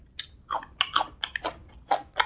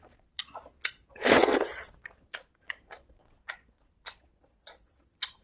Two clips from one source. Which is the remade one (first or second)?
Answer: second